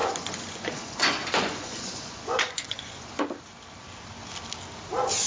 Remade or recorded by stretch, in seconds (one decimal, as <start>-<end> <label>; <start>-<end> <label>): 0.0-3.2 remade; 3.2-5.3 recorded